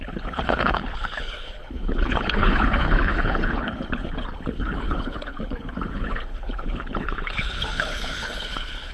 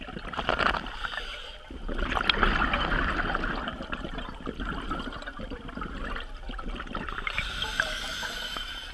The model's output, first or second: first